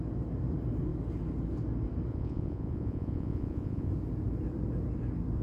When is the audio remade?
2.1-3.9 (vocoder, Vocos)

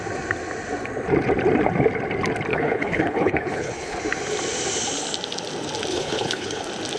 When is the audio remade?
2.5-4.0 (codec, HILCodec); 5.9-6.6

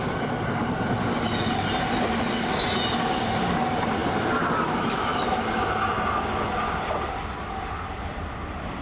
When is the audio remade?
none

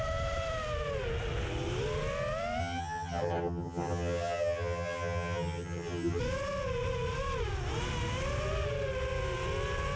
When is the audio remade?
2.6-6.2 (vocoder, HiFi-GAN)

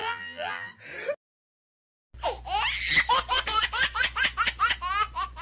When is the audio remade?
0.0-0.7 (vocoder, BigVGAN v2)

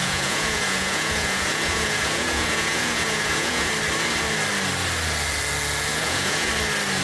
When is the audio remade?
0.0-3.7 (vocoder, Vocos); 5.9-6.5